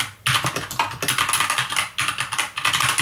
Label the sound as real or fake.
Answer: real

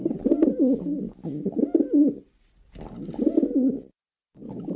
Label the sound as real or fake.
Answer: real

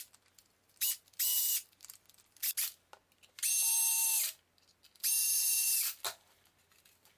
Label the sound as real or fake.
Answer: real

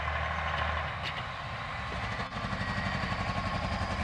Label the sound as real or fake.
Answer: real